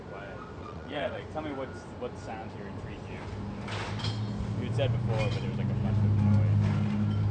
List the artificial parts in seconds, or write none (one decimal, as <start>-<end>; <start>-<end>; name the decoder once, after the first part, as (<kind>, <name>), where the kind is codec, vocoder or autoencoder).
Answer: 0.6-1.2 (vocoder, WaveNeXt)